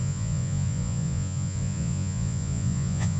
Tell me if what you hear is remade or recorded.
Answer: remade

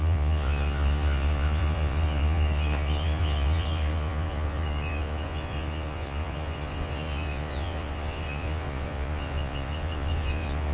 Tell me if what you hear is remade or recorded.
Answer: remade